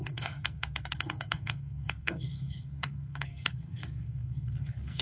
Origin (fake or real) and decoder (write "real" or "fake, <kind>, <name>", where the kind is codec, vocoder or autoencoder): fake, codec, SNAC